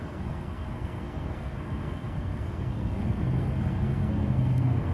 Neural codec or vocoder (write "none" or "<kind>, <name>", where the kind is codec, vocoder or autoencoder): codec, SNAC